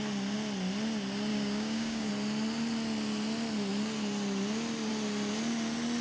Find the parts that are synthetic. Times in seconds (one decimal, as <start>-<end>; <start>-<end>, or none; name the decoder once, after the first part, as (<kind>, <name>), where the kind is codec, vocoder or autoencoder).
1.3-2.1 (codec, DAC)